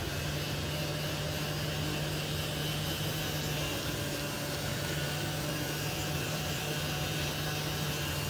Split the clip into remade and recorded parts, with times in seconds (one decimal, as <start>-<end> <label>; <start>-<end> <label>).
0.0-4.7 recorded; 4.7-6.6 remade; 6.6-8.3 recorded